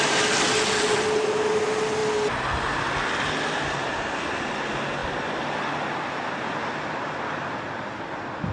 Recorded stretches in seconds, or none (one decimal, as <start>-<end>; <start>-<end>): 0.0-8.5